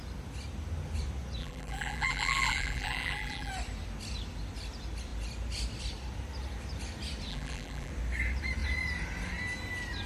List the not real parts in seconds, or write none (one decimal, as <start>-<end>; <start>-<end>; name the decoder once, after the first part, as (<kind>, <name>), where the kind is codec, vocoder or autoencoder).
1.4-3.5 (vocoder, BigVGAN v2); 7.3-7.9